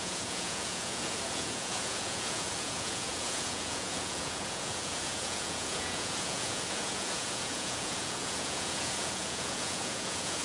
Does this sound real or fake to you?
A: fake